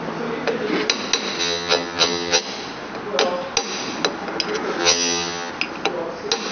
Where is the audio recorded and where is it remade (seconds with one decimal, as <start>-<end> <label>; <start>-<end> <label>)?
0.0-1.4 recorded; 1.4-2.4 remade; 2.4-4.8 recorded; 4.8-5.5 remade; 5.5-6.5 recorded